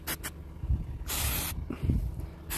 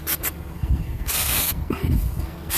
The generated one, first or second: second